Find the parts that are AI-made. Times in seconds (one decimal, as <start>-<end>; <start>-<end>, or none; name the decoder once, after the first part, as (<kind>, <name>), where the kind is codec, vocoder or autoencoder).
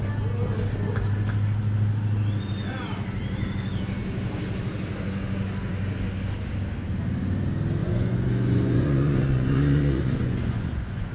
7.8-11.1 (vocoder, Vocos)